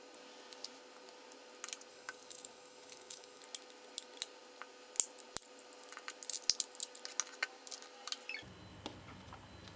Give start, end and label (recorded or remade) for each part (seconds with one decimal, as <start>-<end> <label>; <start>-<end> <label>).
0.0-1.9 recorded; 1.9-3.4 remade; 3.4-9.8 recorded